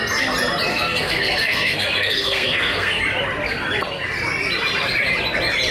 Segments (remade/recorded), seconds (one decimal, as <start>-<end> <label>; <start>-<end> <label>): 0.0-0.7 recorded; 0.7-3.0 remade; 3.0-5.7 recorded

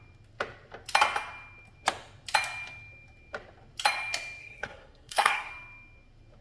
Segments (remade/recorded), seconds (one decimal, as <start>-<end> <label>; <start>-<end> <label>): 0.0-4.4 recorded; 4.4-5.5 remade; 5.5-6.4 recorded

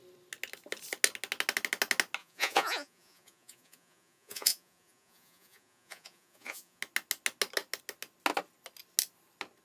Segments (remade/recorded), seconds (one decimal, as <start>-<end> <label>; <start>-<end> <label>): 0.0-2.2 recorded; 2.2-6.8 remade; 6.8-9.6 recorded

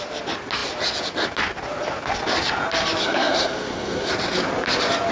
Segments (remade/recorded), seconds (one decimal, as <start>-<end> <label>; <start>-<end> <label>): 0.0-3.0 recorded; 3.0-4.1 remade; 4.1-5.1 recorded

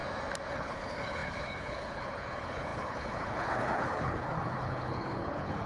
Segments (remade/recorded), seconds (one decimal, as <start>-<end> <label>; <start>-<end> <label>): 0.0-0.5 recorded; 0.5-5.7 remade

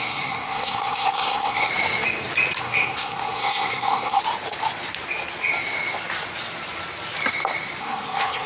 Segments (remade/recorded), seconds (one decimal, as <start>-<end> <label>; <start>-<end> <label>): 0.0-1.7 remade; 1.7-2.6 recorded; 2.6-4.2 remade; 4.2-7.8 recorded; 7.8-8.5 remade

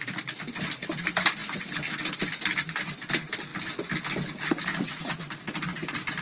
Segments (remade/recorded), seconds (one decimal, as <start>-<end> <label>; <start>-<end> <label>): 0.0-4.7 recorded; 4.7-5.3 remade; 5.3-6.2 recorded